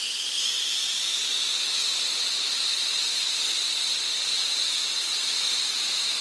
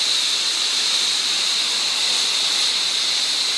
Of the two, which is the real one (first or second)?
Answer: first